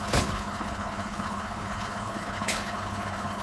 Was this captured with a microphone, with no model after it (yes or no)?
no